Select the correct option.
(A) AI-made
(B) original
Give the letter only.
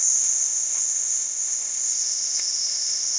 A